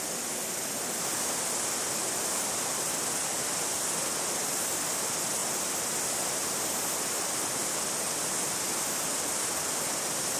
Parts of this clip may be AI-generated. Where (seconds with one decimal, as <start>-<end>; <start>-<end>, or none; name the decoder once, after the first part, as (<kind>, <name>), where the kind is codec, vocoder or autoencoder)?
5.4-7.4 (vocoder, BigVGAN v2)